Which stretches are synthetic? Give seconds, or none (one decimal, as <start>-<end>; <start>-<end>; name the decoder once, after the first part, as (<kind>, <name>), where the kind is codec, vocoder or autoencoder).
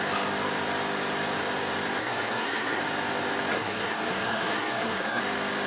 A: 2.0-2.8 (codec, SNAC); 3.5-5.2